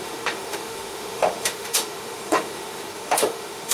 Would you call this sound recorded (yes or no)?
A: no